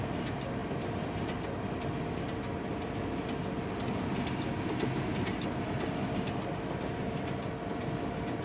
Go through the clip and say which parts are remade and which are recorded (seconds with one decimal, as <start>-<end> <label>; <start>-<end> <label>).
0.0-8.4 recorded